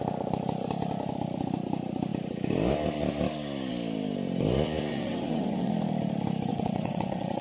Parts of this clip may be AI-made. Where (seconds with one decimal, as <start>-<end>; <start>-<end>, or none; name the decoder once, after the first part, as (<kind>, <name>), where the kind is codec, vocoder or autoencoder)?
4.9-5.7 (vocoder, WaveNeXt); 6.5-7.4